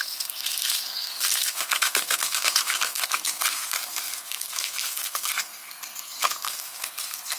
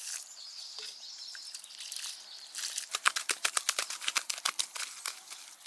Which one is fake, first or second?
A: first